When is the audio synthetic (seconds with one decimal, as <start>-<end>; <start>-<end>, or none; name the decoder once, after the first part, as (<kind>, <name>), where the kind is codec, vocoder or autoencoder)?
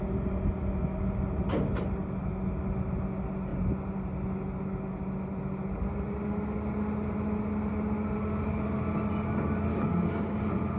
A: 9.7-10.4 (codec, DAC)